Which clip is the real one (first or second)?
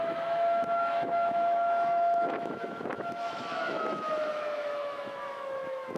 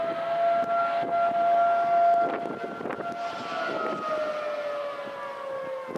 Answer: second